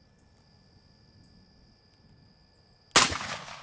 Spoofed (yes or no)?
no